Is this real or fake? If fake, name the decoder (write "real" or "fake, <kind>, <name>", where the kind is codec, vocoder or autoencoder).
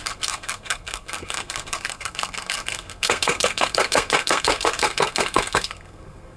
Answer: fake, codec, SNAC